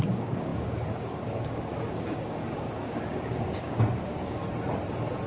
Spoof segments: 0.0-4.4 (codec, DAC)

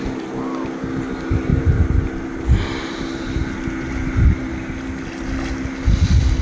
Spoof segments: none

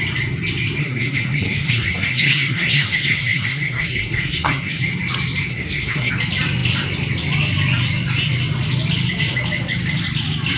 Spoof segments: 0.8-4.8 (codec, SNAC); 5.5-6.1

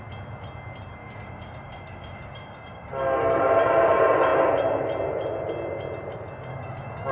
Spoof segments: 1.0-3.4 (codec, DAC); 6.5-7.1

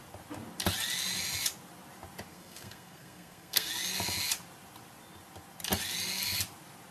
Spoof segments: 2.3-3.7 (codec, SNAC)

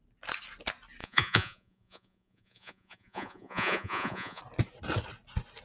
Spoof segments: 1.0-4.4 (vocoder, Vocos)

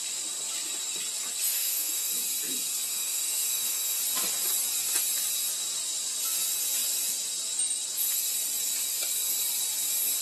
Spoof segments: 1.4-2.1 (autoencoder, DAC-VAE); 2.9-4.0